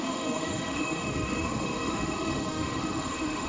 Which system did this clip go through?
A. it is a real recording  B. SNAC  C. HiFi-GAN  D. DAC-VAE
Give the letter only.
D